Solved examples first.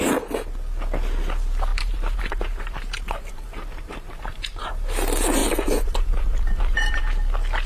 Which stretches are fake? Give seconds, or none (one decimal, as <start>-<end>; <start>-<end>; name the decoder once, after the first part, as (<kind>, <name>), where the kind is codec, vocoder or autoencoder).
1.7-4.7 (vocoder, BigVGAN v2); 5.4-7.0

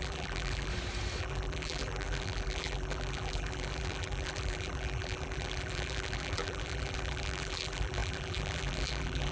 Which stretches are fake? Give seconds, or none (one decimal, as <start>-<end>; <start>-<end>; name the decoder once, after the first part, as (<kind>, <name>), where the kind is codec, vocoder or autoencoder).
0.0-0.7 (vocoder, BigVGAN v2); 1.2-9.3

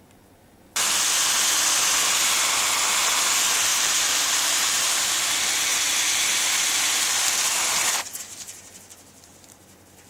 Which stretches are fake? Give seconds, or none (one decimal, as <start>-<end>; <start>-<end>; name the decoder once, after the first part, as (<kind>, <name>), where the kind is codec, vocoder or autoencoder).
3.7-4.9 (vocoder, BigVGAN v2); 5.7-8.9